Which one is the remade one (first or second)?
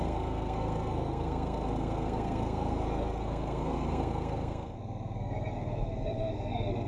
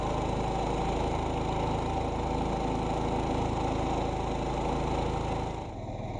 first